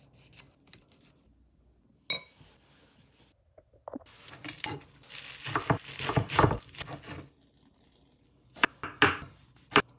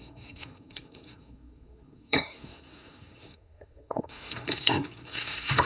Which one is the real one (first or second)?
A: first